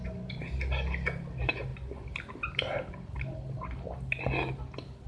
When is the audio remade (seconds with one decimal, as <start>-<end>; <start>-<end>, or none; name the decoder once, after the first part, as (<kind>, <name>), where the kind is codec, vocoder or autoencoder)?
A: none